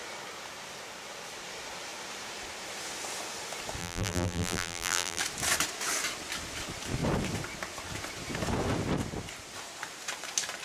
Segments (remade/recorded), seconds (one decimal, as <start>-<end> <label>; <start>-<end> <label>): 0.0-3.8 recorded; 3.8-5.2 remade; 5.2-10.6 recorded